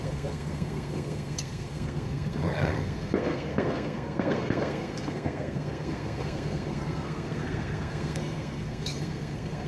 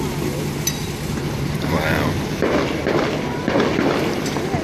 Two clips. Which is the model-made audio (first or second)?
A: first